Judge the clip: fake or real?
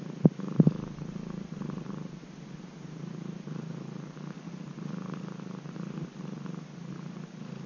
real